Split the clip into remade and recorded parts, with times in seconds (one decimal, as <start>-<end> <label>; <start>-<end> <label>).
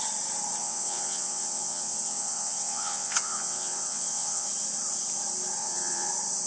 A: 0.0-0.6 recorded; 0.6-4.5 remade; 4.5-5.6 recorded; 5.6-6.1 remade; 6.1-6.5 recorded